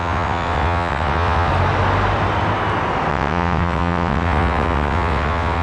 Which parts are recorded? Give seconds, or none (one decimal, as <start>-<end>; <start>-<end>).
1.5-3.1